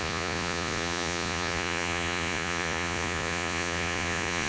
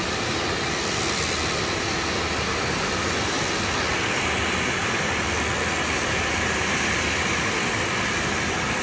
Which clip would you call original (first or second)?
second